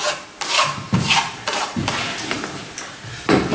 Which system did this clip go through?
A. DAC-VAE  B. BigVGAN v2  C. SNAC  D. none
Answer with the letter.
B